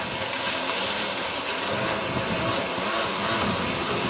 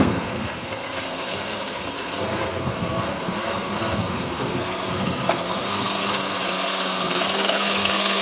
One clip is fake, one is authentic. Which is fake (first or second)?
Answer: second